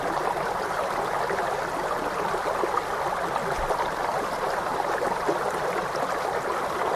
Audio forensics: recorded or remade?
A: recorded